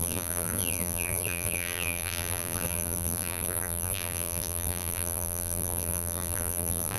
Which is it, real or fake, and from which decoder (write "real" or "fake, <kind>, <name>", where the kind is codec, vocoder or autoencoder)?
fake, vocoder, BigVGAN v2